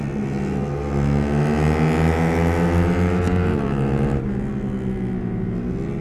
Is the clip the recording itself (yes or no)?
yes